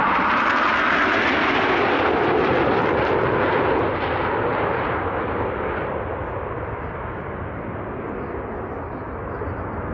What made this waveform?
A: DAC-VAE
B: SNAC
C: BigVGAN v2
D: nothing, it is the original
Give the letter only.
D